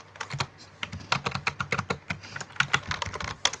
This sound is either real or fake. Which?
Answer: real